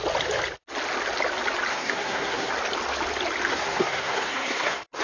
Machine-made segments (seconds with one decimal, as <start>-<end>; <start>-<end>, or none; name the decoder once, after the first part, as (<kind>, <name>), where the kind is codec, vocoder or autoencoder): 1.7-2.5 (codec, SNAC); 3.5-5.0